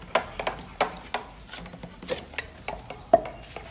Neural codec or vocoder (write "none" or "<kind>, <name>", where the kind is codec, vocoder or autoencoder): none